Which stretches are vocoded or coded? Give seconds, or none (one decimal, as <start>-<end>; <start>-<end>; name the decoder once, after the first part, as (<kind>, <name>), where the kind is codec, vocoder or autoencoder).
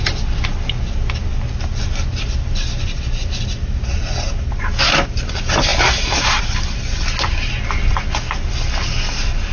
none